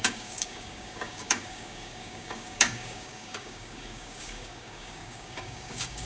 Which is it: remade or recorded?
remade